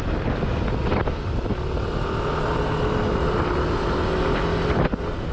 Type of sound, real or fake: real